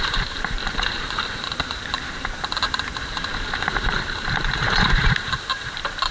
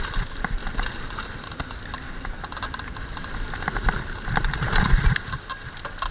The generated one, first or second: first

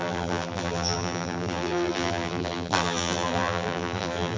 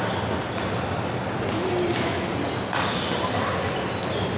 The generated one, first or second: first